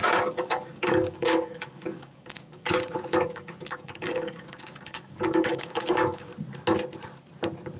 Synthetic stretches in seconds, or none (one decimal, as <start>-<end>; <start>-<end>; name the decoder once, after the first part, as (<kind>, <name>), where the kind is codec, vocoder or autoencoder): 0.0-6.3 (codec, DAC)